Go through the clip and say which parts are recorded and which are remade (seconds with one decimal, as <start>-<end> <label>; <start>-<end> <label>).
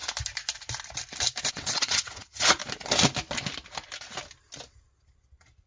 0.0-1.5 recorded; 1.5-2.6 remade; 2.6-5.7 recorded